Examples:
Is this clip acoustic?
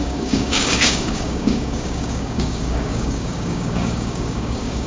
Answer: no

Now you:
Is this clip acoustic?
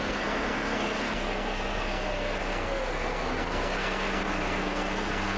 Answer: no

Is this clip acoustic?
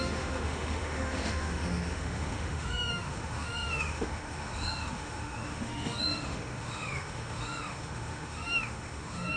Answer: no